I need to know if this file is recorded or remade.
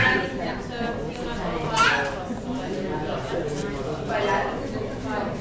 recorded